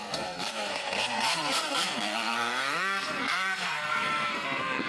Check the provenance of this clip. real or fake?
fake